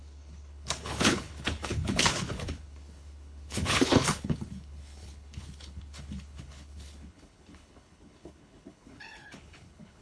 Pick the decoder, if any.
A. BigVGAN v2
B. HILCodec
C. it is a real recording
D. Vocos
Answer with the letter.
B